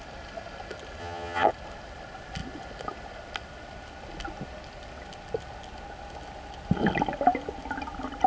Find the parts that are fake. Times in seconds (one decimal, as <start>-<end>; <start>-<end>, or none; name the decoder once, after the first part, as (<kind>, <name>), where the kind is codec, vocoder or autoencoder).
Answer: 1.0-1.5 (vocoder, HiFi-GAN)